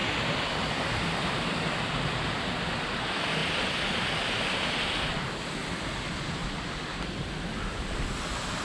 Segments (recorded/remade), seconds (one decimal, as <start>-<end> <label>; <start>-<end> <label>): 0.0-2.6 recorded; 2.6-3.4 remade; 3.4-5.1 recorded; 5.1-6.4 remade; 6.4-7.1 recorded; 7.1-8.6 remade